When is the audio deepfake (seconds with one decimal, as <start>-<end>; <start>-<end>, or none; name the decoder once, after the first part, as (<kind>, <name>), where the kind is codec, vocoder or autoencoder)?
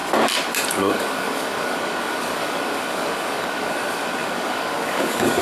0.7-5.4 (codec, DAC)